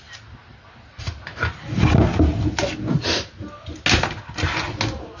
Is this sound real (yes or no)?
yes